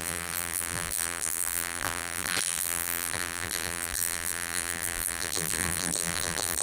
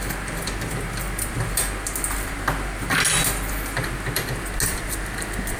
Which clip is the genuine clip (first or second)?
second